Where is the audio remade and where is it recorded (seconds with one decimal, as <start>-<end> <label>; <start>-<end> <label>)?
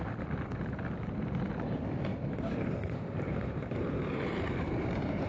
0.0-2.1 recorded; 2.1-5.3 remade